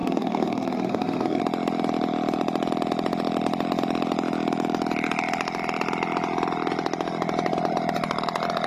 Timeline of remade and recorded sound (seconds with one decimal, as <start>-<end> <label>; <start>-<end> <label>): 0.0-1.4 remade; 1.4-8.7 recorded